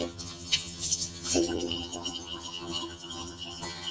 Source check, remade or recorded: remade